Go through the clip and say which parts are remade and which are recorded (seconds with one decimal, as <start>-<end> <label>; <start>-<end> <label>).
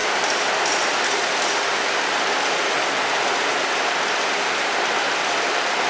0.0-5.9 recorded